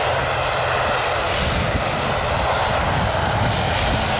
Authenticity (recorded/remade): recorded